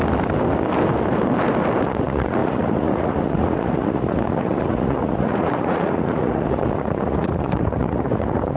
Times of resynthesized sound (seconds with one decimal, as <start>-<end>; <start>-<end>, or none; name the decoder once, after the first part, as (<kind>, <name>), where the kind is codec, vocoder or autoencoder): 1.8-8.6 (vocoder, Vocos)